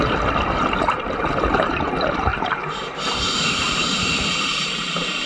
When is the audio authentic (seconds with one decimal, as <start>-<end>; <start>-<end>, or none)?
0.0-2.3